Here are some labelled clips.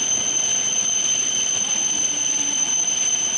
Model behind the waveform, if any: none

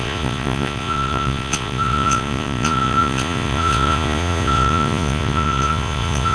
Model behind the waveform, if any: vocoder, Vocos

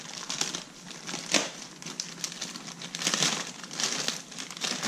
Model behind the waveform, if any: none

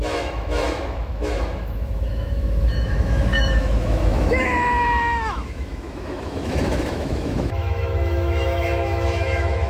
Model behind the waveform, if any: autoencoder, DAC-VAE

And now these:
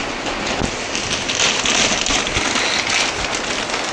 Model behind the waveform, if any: none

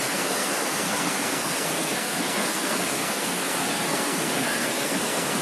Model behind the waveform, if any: codec, SNAC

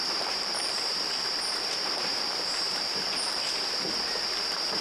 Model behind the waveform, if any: vocoder, BigVGAN v2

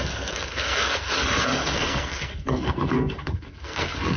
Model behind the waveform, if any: codec, SNAC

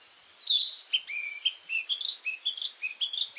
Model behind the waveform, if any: none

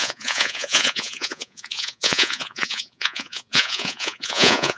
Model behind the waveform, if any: vocoder, Vocos